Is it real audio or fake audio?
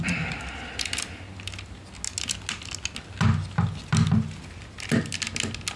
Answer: real